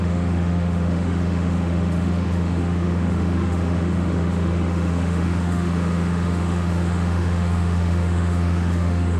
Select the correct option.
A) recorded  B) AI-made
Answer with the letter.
B